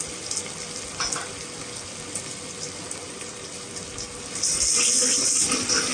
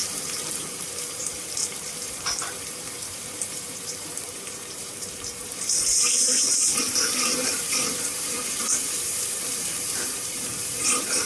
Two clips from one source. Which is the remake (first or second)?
second